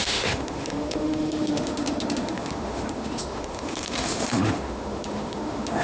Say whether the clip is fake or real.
fake